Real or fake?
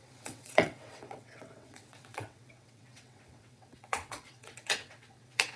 fake